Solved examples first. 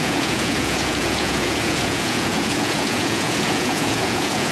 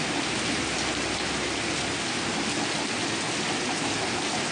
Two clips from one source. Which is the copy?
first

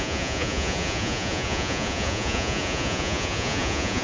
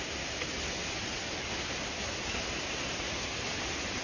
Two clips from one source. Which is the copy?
first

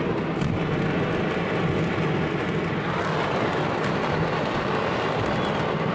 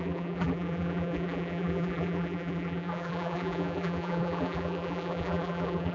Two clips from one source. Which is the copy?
second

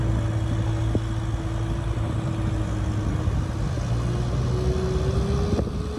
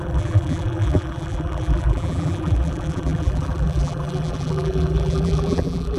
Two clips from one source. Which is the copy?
second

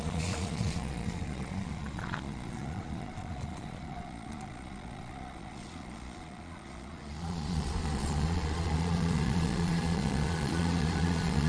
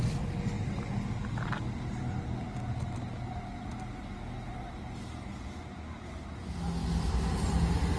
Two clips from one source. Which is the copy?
first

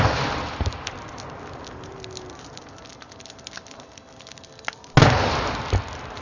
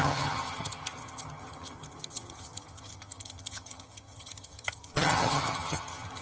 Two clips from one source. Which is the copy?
second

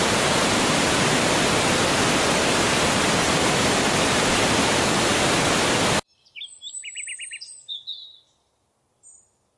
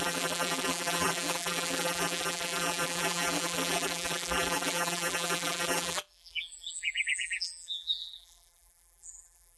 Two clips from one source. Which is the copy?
second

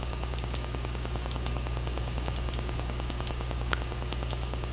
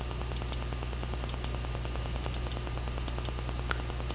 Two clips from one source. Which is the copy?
first